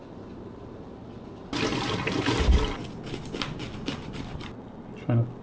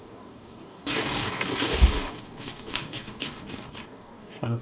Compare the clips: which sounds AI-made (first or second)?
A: second